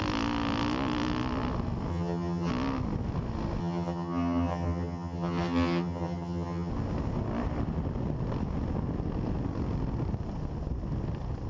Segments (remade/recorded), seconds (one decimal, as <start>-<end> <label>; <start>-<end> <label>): 0.0-1.9 recorded; 1.9-2.5 remade; 2.5-3.6 recorded; 3.6-6.7 remade; 6.7-11.5 recorded